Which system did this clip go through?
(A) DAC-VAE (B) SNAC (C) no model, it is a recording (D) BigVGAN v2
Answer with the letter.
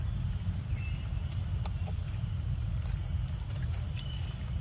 C